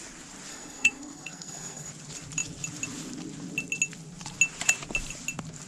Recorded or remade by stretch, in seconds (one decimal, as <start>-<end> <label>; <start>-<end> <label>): 0.0-0.5 recorded; 0.5-1.9 remade; 1.9-5.7 recorded